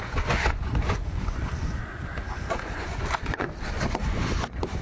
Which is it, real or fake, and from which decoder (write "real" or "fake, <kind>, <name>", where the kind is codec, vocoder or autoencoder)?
fake, vocoder, Vocos